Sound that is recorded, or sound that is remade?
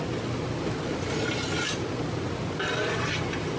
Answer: recorded